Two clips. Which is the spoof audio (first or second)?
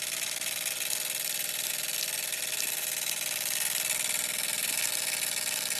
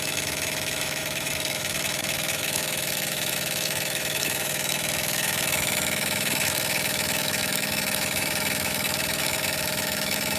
second